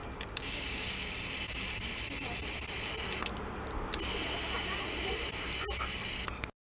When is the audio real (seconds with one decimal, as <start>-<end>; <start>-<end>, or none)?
1.1-6.7